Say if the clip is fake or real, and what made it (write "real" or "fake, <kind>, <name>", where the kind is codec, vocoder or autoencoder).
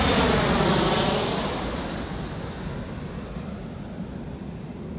real